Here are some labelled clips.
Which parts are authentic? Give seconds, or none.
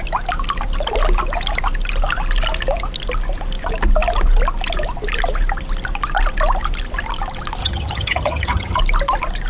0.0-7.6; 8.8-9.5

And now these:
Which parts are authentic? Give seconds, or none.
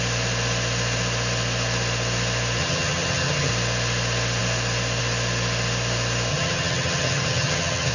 0.0-2.6; 3.5-6.3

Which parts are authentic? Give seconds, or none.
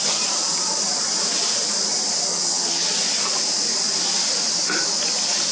0.0-2.3; 2.9-5.5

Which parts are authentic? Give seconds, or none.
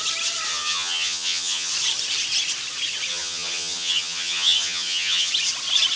0.0-0.5; 1.7-3.1; 5.3-6.0